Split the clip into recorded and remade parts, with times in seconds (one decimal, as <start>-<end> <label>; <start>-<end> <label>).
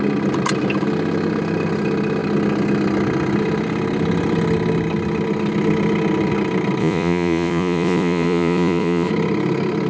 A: 0.0-6.8 recorded; 6.8-9.1 remade; 9.1-9.9 recorded